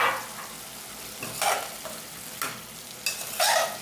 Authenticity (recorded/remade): recorded